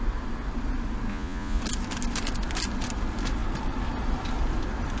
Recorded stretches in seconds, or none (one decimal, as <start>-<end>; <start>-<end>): 0.0-1.1; 1.6-5.0